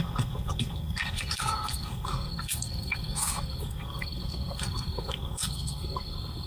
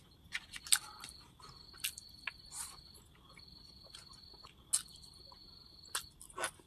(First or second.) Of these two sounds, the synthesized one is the first